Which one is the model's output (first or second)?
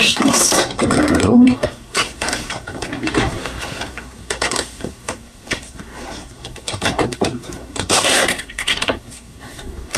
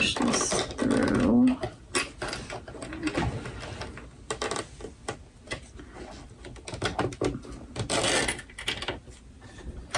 first